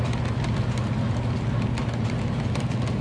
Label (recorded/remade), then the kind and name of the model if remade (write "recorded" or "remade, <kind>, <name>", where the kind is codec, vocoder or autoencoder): recorded